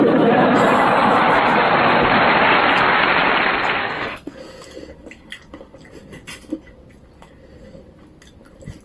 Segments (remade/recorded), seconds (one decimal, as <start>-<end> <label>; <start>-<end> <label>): 0.0-3.8 recorded; 3.8-4.4 remade; 4.4-8.8 recorded